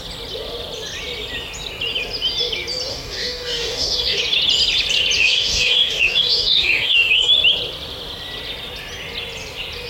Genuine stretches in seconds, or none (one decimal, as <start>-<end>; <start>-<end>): 0.0-2.9; 4.2-5.2; 7.3-9.9

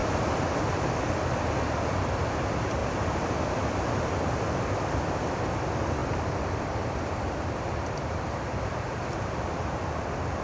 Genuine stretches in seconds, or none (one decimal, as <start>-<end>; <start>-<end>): 0.9-2.8; 3.3-6.0; 9.5-10.4

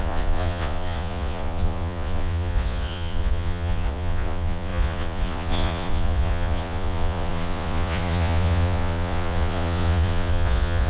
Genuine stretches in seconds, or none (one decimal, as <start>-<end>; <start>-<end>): none

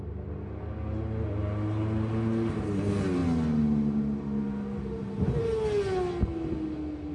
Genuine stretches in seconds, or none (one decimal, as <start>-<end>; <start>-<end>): 0.0-7.1

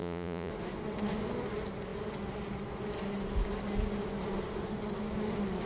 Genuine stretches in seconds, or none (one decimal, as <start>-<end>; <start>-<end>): 0.5-5.7

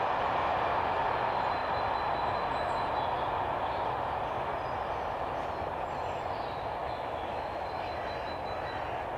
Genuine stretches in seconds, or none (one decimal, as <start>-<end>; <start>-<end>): 0.0-6.8; 7.9-9.2

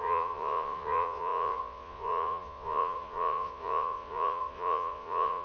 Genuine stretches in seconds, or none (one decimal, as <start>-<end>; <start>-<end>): none